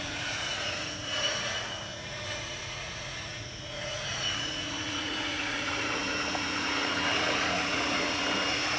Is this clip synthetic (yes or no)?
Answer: yes